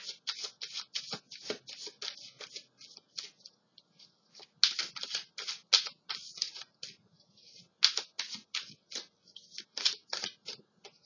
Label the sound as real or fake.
real